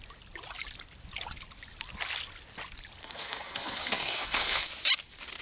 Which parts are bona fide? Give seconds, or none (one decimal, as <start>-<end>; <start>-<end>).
0.0-3.0; 4.7-5.4